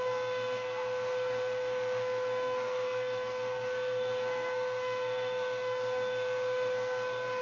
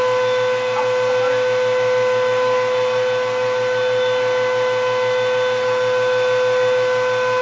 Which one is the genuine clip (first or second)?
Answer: second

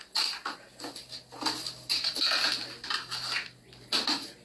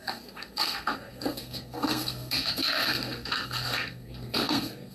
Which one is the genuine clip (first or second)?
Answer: first